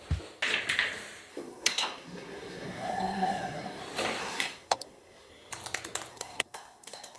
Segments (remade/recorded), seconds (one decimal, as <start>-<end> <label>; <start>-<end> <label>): 0.0-1.3 recorded; 1.3-3.8 remade; 3.8-4.2 recorded; 4.2-5.3 remade; 5.3-6.1 recorded; 6.1-7.2 remade

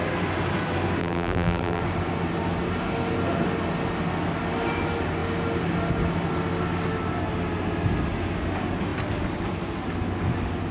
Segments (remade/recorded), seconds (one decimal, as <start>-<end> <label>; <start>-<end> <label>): 0.0-1.0 recorded; 1.0-1.8 remade; 1.8-10.7 recorded

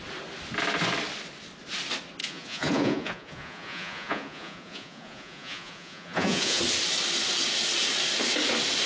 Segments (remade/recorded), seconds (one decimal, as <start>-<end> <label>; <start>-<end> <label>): 0.0-2.2 recorded; 2.2-6.6 remade; 6.6-8.9 recorded